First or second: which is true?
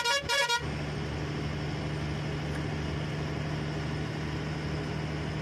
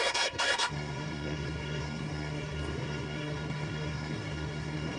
first